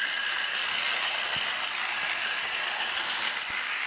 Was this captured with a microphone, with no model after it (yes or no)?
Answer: yes